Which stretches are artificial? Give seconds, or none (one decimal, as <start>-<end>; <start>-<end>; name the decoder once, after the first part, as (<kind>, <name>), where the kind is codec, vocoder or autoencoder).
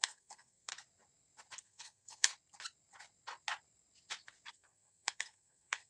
0.0-0.7 (codec, SNAC); 1.6-2.3; 4.5-5.9